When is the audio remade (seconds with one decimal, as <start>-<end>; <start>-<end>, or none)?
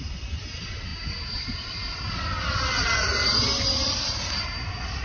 none